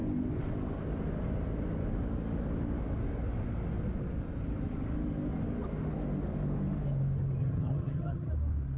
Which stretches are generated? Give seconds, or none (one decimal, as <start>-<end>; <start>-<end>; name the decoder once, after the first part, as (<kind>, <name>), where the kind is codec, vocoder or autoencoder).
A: 7.4-8.3 (vocoder, HiFi-GAN)